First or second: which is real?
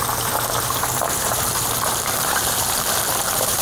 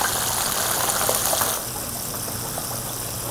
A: second